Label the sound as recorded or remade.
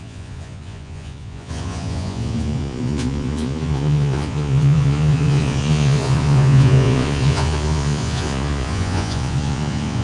remade